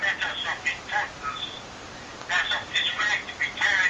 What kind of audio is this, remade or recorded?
recorded